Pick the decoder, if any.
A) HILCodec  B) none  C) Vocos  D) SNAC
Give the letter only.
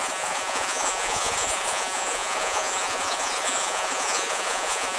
C